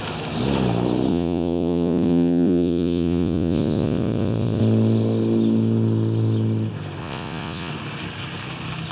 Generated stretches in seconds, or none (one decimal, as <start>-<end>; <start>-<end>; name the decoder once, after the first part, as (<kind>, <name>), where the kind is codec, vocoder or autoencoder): 1.1-4.6 (vocoder, Vocos); 7.0-7.7